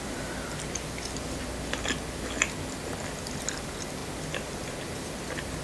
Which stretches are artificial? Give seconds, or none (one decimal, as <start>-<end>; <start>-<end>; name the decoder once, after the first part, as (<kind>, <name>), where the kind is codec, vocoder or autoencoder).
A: 4.0-4.6 (vocoder, BigVGAN v2)